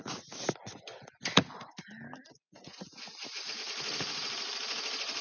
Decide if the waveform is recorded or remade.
recorded